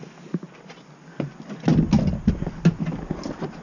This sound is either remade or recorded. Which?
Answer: recorded